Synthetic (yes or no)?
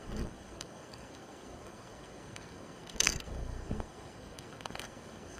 yes